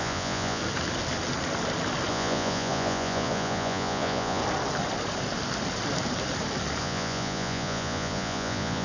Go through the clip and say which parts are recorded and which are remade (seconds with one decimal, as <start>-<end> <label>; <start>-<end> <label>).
0.0-0.6 remade; 0.6-2.1 recorded; 2.1-4.4 remade; 4.4-6.8 recorded; 6.8-8.8 remade